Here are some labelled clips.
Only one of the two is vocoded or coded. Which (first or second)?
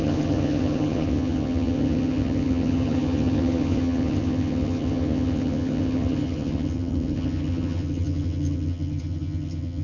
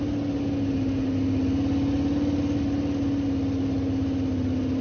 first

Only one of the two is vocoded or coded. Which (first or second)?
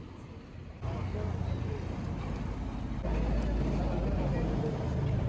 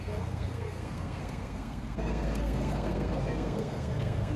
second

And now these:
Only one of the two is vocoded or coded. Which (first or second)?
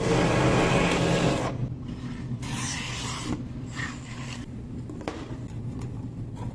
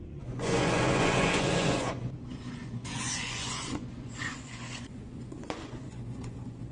second